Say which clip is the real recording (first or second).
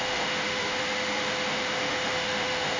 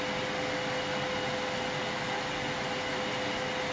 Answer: second